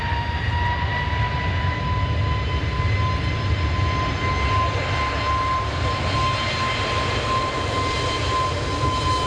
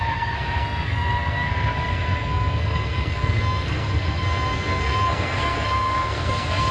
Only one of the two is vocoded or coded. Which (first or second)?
second